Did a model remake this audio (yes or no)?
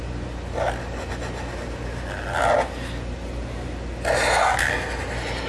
no